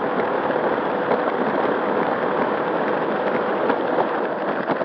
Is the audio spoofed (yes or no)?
no